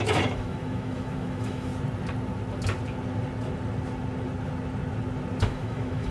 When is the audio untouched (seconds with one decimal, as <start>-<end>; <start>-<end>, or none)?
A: 1.7-5.4

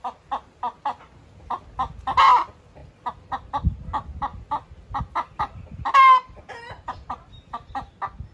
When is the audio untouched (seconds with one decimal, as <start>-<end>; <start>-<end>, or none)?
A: 0.0-8.3

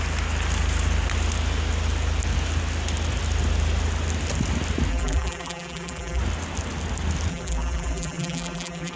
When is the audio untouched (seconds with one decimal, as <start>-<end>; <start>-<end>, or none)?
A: 0.0-4.9; 6.2-7.3

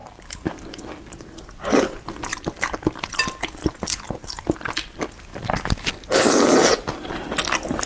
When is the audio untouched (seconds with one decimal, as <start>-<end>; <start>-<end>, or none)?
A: 0.5-7.9

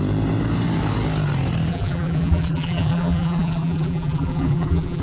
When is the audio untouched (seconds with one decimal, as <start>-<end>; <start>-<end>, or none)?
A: 0.0-1.7

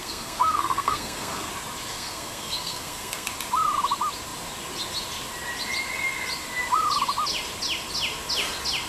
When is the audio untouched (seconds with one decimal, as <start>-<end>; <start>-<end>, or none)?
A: 1.5-1.9; 3.3-8.9

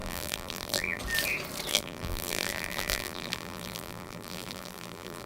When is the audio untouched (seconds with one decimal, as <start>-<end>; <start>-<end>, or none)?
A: 1.0-1.7